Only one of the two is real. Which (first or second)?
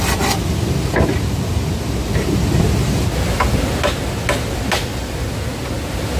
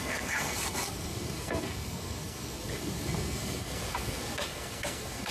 first